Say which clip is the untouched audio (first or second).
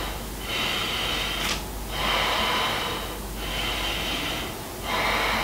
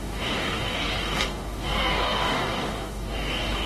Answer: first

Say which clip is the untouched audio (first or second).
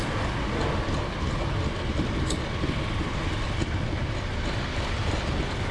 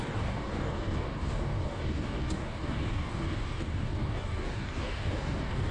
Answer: first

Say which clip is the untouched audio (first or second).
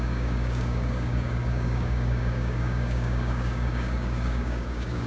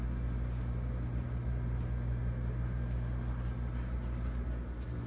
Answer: second